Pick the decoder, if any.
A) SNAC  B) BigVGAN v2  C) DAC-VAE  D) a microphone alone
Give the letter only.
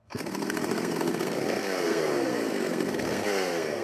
A